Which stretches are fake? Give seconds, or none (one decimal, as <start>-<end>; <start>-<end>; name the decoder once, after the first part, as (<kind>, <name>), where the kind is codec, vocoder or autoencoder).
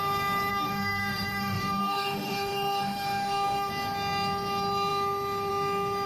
0.5-3.7 (autoencoder, DAC-VAE)